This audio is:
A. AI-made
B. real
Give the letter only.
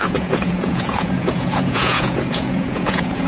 A